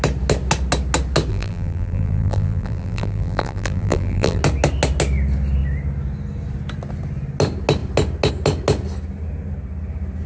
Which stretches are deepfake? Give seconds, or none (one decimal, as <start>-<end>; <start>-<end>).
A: 1.3-4.4